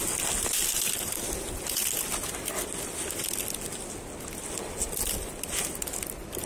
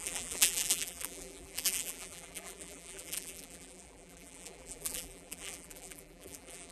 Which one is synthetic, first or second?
second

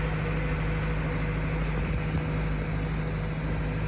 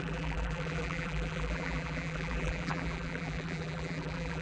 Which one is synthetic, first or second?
second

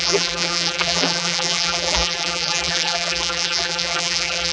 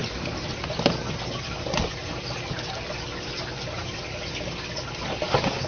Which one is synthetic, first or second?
first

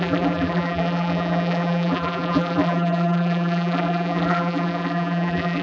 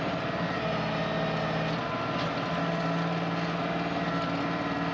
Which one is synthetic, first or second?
first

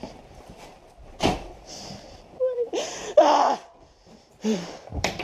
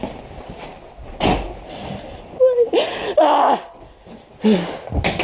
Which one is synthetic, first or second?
first